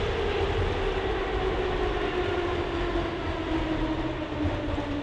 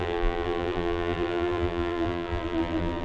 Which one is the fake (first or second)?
second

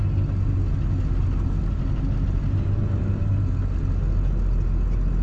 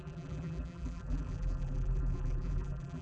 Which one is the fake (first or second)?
second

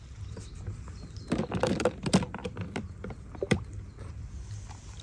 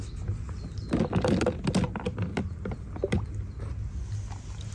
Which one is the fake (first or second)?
first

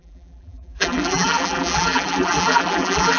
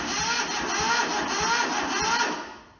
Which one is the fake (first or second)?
first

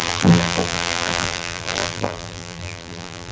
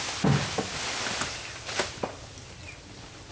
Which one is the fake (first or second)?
first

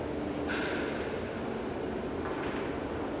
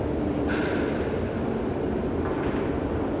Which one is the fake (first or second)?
second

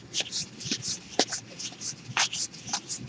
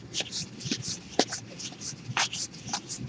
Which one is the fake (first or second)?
second